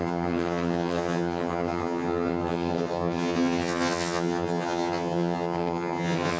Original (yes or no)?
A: no